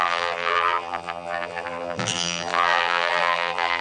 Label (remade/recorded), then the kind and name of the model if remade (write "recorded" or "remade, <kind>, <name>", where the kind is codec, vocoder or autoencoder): remade, vocoder, BigVGAN v2